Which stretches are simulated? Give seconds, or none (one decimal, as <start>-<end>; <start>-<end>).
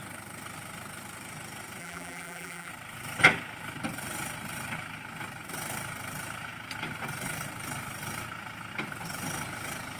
1.8-2.7